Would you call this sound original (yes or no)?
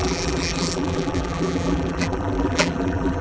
no